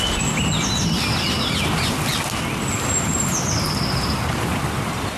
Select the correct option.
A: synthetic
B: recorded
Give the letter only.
B